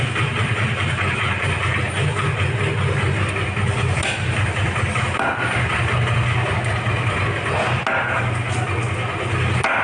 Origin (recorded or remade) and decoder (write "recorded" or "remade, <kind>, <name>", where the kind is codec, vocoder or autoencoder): recorded